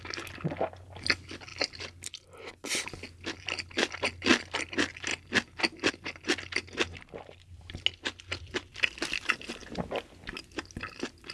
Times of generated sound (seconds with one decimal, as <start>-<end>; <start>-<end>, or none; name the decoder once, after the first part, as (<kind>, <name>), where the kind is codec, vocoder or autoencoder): none